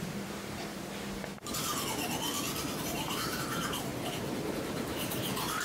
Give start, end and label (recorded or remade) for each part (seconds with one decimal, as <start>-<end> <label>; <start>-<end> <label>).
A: 0.0-1.7 remade; 1.7-2.6 recorded; 2.6-3.9 remade; 3.9-4.5 recorded; 4.5-5.6 remade